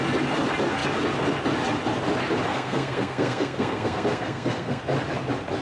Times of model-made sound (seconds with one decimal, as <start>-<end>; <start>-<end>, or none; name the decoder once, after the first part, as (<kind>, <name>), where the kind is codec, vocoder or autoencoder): 2.5-4.8 (codec, SNAC)